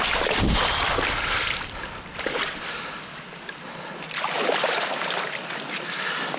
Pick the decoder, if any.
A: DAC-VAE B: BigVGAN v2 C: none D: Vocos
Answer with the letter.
B